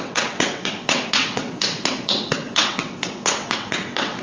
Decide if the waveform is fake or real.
fake